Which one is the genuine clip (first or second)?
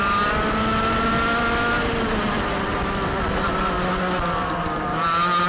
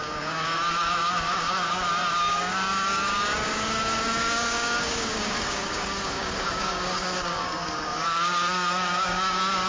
first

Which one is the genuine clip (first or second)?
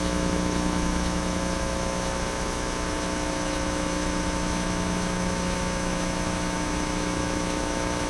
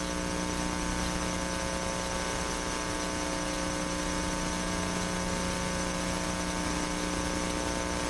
second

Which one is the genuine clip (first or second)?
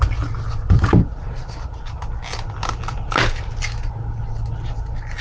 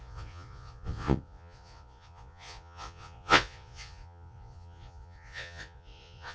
first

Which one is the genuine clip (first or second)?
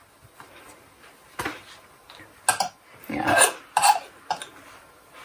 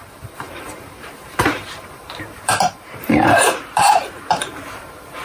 first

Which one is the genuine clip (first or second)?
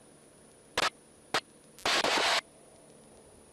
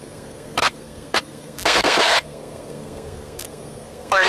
first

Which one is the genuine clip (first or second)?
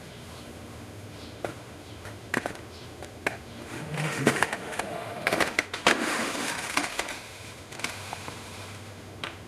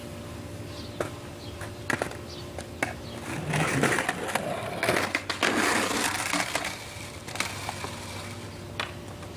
second